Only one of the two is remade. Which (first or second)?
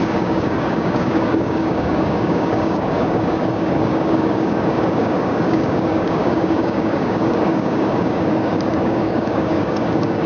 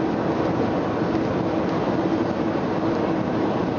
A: first